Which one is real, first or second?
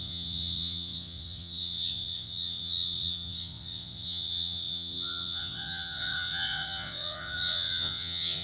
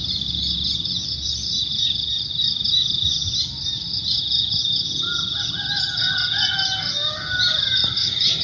second